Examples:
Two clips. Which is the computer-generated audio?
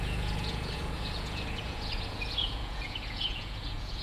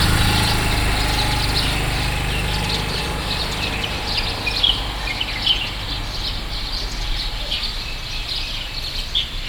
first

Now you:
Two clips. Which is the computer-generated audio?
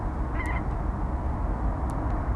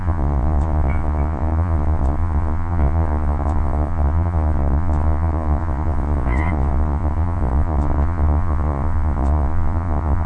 second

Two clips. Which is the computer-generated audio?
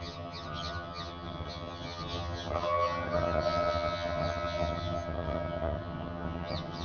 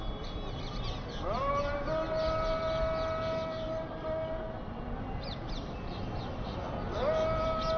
first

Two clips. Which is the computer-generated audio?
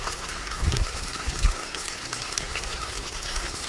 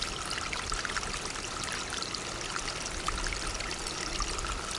first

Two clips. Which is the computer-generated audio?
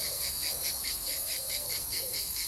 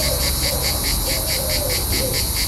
first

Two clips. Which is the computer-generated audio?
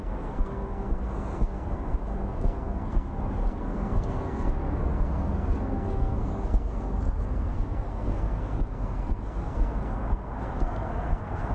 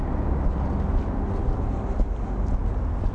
first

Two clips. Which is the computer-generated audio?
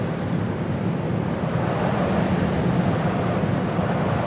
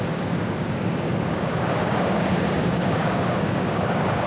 second